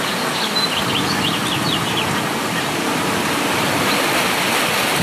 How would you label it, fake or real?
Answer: real